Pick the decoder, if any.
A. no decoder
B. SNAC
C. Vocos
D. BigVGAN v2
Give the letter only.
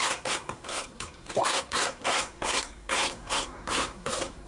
B